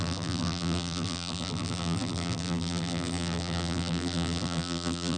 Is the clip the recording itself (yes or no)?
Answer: no